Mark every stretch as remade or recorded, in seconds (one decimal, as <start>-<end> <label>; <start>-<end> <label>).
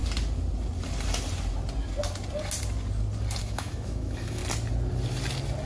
0.0-3.4 recorded; 3.4-4.4 remade; 4.4-5.7 recorded